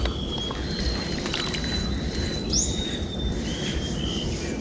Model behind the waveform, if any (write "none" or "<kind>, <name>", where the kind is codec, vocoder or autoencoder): none